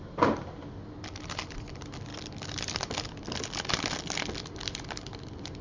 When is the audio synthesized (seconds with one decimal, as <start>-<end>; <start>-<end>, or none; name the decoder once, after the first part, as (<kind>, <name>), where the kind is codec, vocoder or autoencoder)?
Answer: none